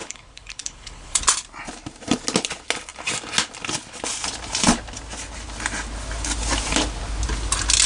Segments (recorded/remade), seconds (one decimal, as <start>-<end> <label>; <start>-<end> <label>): 0.0-1.2 remade; 1.2-7.9 recorded